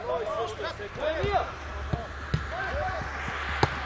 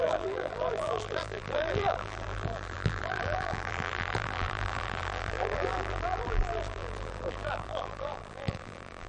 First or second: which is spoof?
second